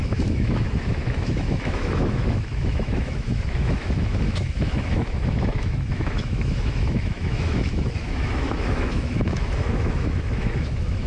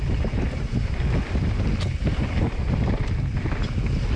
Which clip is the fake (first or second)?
first